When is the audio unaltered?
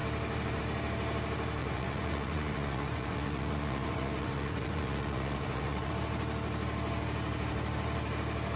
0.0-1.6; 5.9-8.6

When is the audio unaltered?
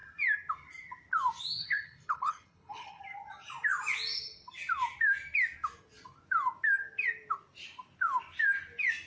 0.0-1.6; 3.0-9.1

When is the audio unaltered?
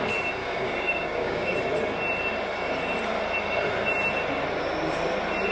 0.0-0.4; 1.5-5.5